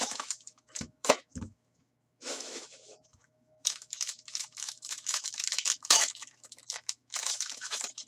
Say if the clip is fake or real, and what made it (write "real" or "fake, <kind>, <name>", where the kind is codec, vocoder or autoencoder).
fake, autoencoder, DAC-VAE